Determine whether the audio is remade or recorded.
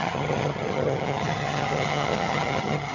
remade